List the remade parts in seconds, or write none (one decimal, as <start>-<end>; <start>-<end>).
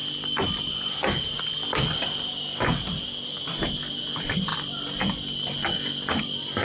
none